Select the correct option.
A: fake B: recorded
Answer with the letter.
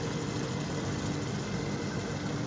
B